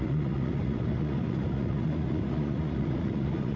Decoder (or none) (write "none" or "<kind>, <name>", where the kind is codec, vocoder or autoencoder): vocoder, Vocos